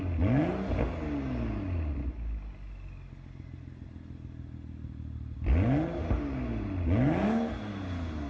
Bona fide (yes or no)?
yes